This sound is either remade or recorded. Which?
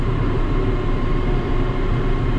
remade